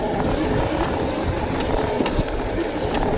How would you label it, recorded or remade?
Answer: recorded